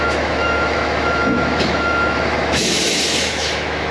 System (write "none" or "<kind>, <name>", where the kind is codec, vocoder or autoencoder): autoencoder, DAC-VAE